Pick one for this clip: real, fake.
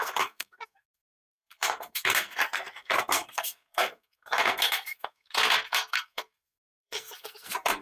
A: fake